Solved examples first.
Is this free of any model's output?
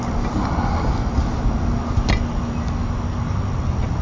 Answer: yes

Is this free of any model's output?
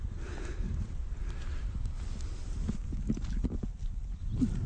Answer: yes